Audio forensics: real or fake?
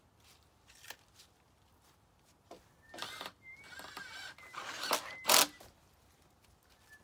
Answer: real